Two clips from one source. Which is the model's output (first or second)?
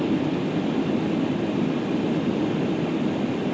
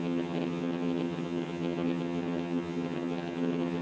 second